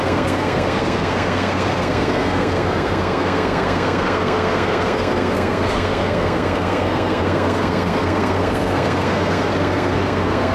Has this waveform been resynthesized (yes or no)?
yes